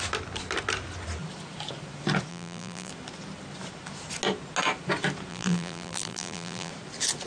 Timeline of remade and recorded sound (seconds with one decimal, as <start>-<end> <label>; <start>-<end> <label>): 0.0-2.3 recorded; 2.3-2.9 remade; 2.9-5.3 recorded; 5.3-6.7 remade; 6.7-7.3 recorded